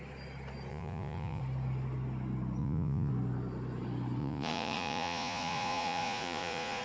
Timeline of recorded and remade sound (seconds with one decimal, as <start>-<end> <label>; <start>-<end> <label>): 0.0-0.7 recorded; 0.7-1.4 remade; 1.4-2.6 recorded; 2.6-3.1 remade; 3.1-4.2 recorded; 4.2-6.8 remade

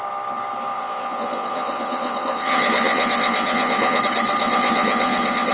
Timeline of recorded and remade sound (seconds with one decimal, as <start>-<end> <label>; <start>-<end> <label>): 0.0-0.7 recorded; 0.7-4.0 remade; 4.0-4.4 recorded; 4.4-5.5 remade

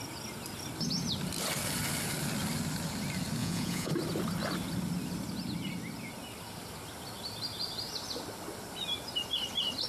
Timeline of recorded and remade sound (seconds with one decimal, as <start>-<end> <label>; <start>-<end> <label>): 0.0-3.4 recorded; 3.4-3.9 remade; 3.9-9.9 recorded

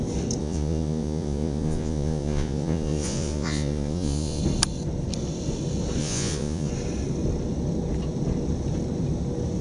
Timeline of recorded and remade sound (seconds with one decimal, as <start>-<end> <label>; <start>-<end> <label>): 0.0-0.4 recorded; 0.4-4.4 remade; 4.4-6.0 recorded; 6.0-6.7 remade; 6.7-9.6 recorded

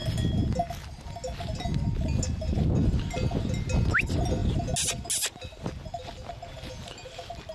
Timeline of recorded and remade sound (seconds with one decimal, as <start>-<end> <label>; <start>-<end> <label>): 0.0-7.5 recorded

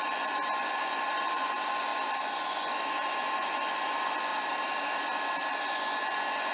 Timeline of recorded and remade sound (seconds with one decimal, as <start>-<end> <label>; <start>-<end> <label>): 0.0-4.3 remade; 4.3-5.5 recorded; 5.5-6.5 remade

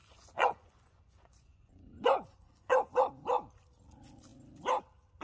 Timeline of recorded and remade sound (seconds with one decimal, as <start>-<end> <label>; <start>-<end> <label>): 0.0-3.1 remade; 3.1-5.2 recorded